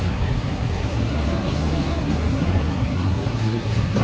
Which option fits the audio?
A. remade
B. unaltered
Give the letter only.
A